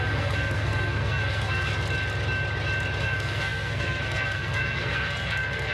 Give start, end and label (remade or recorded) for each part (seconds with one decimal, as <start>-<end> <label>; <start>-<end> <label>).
0.0-1.7 remade; 1.7-3.0 recorded; 3.0-5.7 remade